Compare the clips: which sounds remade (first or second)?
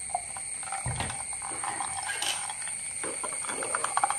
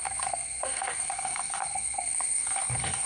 second